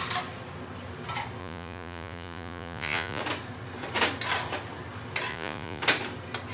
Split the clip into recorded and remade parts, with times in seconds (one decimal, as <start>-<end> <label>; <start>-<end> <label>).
0.0-1.4 recorded; 1.4-3.2 remade; 3.2-5.3 recorded; 5.3-5.8 remade; 5.8-6.5 recorded